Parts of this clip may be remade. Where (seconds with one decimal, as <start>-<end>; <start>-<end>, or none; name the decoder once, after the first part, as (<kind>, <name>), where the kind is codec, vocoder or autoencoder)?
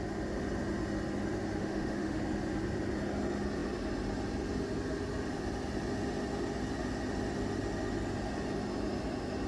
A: 1.6-2.2 (autoencoder, DAC-VAE)